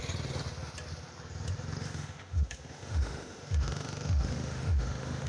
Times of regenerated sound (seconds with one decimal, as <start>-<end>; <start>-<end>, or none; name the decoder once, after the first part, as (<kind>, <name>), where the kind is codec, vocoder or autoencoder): 1.8-5.3 (autoencoder, DAC-VAE)